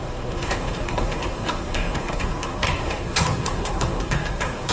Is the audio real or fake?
fake